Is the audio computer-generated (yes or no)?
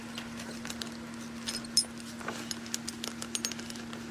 no